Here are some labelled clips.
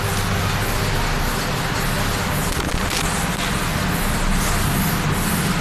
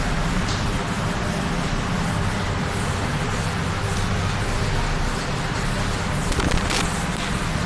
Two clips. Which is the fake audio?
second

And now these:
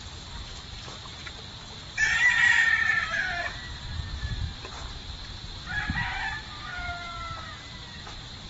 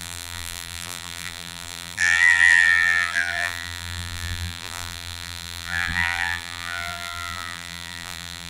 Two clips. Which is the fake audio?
second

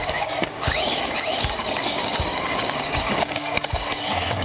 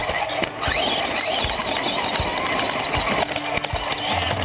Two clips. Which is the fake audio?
first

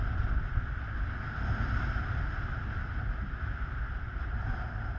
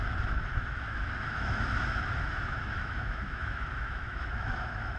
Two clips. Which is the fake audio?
second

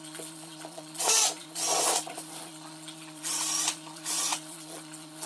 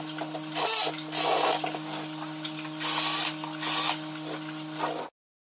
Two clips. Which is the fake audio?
first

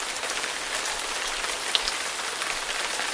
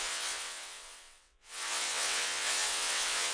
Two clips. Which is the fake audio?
second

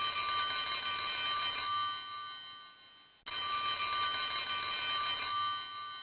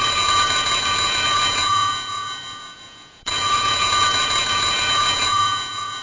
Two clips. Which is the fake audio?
second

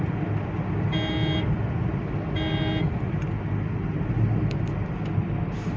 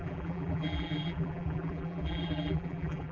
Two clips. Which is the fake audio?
second